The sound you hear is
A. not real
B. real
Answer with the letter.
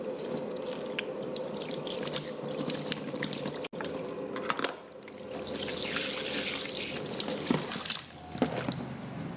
B